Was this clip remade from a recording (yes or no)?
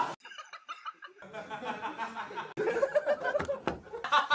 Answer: no